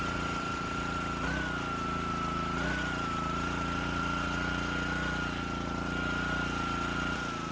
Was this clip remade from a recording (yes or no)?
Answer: no